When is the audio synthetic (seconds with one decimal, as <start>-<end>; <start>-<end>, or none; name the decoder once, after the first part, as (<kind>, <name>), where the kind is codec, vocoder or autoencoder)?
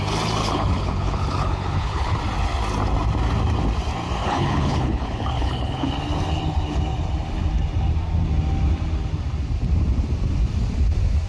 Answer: 0.4-2.2 (codec, HILCodec); 4.2-5.9